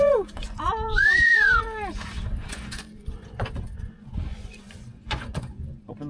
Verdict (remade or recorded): remade